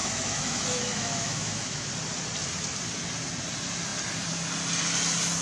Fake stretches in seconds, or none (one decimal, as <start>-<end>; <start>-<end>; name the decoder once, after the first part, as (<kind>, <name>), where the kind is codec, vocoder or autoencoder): 0.0-1.9 (autoencoder, DAC-VAE)